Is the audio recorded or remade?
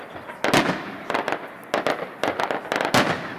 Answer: recorded